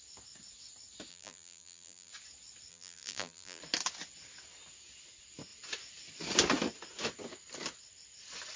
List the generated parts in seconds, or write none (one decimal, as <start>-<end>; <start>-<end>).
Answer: 1.1-2.1; 2.7-3.6